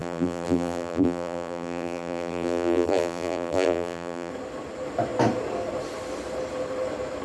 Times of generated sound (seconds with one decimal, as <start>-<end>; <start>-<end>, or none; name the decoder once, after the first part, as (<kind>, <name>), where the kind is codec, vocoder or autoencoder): 0.0-4.3 (vocoder, BigVGAN v2)